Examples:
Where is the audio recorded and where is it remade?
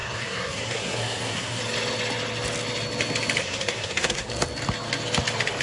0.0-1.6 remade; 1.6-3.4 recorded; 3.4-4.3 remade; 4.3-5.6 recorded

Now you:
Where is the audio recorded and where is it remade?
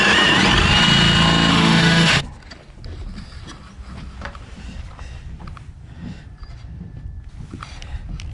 0.0-1.5 recorded; 1.5-2.2 remade; 2.2-8.3 recorded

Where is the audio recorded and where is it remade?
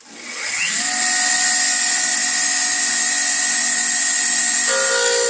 0.0-5.3 recorded